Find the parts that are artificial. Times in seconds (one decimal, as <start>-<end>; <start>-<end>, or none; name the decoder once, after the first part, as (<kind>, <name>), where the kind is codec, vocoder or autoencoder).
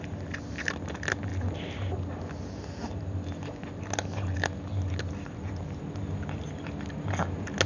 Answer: none